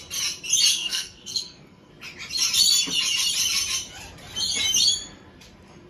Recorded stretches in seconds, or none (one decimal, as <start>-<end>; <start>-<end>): 0.0-0.7; 1.9-5.9